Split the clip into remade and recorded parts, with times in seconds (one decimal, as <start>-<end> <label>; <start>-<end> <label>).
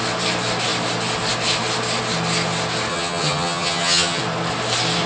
0.0-2.9 recorded; 2.9-4.2 remade; 4.2-5.1 recorded